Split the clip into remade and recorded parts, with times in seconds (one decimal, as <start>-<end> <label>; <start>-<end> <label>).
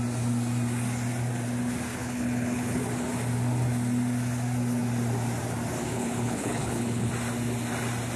0.0-1.9 recorded; 1.9-2.8 remade; 2.8-5.9 recorded; 5.9-7.1 remade; 7.1-8.2 recorded